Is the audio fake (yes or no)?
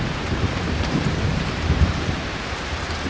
yes